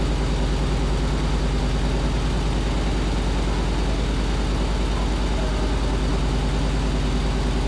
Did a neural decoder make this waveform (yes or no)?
no